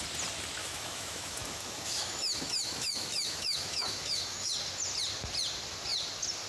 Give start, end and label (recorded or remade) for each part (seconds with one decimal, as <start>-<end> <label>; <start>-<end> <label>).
0.0-0.6 recorded; 0.6-4.5 remade; 4.5-6.5 recorded